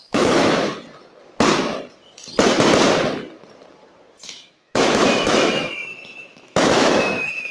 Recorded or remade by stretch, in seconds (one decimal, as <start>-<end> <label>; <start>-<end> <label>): 0.0-0.7 remade; 0.7-4.3 recorded; 4.3-7.5 remade